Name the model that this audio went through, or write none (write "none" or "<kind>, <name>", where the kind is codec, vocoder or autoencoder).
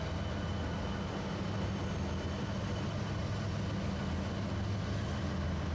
none